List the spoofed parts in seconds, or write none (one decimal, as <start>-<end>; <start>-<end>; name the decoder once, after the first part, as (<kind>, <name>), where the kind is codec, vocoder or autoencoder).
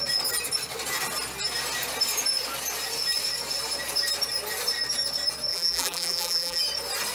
5.5-6.6 (vocoder, BigVGAN v2)